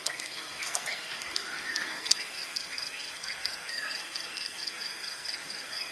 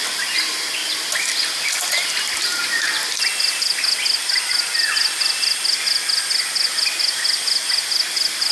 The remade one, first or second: first